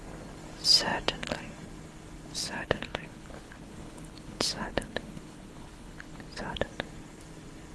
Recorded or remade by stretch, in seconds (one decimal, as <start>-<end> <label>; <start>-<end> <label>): 0.0-2.4 recorded; 2.4-6.6 remade; 6.6-7.7 recorded